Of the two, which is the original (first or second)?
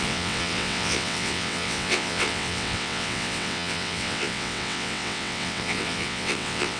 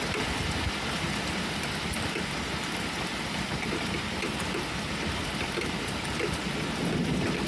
second